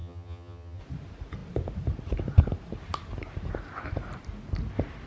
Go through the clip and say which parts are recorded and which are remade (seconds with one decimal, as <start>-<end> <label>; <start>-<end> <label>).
0.0-0.8 remade; 0.8-5.1 recorded